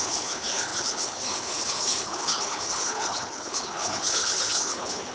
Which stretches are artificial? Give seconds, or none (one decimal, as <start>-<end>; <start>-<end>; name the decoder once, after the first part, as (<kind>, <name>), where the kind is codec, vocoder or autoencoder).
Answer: 0.0-5.1 (codec, HILCodec)